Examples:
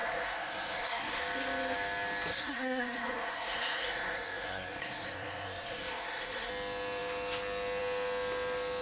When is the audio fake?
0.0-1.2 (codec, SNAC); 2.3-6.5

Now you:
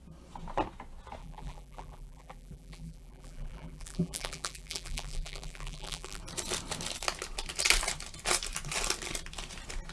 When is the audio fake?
1.2-6.2 (vocoder, BigVGAN v2)

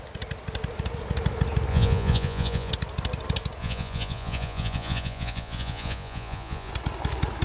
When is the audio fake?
1.7-2.7 (vocoder, Vocos); 3.6-6.7